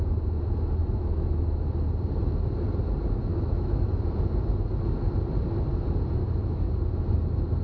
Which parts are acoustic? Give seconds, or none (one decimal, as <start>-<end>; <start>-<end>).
0.0-0.8; 1.7-3.3; 4.0-6.2; 6.7-7.6